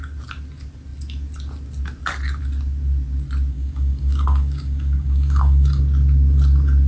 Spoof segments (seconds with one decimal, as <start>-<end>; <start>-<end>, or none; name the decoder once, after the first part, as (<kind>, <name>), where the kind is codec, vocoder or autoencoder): 3.5-5.8 (codec, DAC)

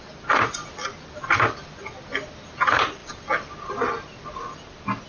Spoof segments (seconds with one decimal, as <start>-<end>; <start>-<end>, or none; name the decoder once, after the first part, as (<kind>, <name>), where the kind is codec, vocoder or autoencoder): none

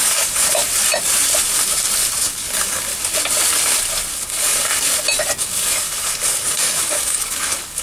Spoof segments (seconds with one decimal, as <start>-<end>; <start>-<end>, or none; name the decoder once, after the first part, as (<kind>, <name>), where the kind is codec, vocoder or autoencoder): 0.0-0.6 (codec, DAC); 2.2-2.9; 4.1-4.7; 5.4-7.8

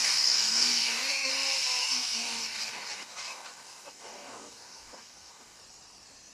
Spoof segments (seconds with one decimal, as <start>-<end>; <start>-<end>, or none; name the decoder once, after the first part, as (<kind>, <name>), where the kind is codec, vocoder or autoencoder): 0.0-1.3 (codec, DAC); 1.8-5.6